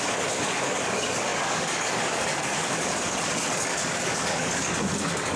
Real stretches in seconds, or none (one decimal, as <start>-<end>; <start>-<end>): none